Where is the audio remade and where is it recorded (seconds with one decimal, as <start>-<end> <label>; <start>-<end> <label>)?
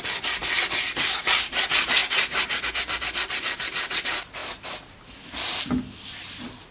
0.0-0.4 recorded; 0.4-1.2 remade; 1.2-6.7 recorded